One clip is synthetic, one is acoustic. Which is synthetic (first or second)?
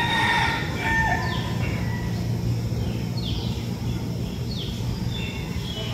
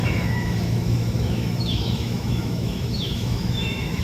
second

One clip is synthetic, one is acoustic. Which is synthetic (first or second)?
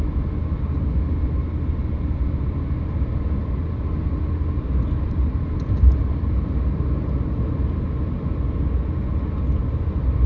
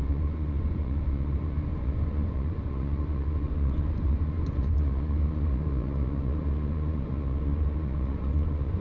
second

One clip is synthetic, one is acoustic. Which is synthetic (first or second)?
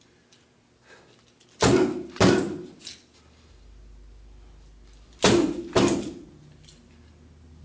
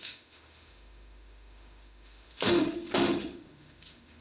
second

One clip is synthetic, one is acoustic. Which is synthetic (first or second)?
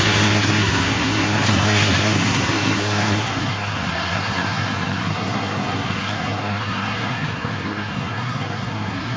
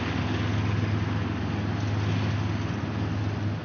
first